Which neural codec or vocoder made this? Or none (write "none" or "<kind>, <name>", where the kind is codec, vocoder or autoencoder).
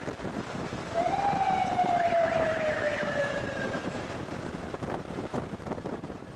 vocoder, BigVGAN v2